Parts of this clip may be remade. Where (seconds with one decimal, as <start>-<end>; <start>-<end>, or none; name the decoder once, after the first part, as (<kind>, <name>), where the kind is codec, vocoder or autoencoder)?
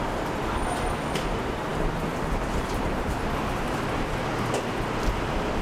1.7-3.3 (vocoder, BigVGAN v2)